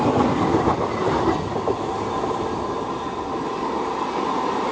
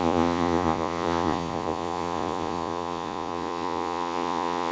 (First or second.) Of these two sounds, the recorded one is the first